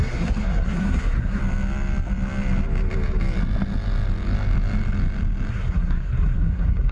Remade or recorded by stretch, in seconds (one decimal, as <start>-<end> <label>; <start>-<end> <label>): 0.0-1.4 remade; 1.4-5.5 recorded; 5.5-6.9 remade